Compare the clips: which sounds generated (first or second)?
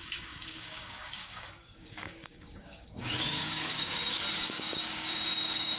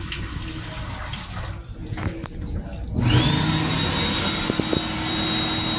first